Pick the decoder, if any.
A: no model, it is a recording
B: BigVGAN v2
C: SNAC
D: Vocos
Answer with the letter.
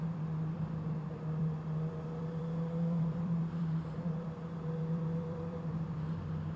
B